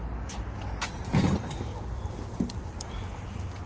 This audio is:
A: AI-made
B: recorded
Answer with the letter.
B